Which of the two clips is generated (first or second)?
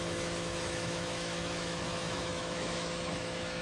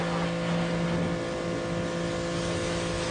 first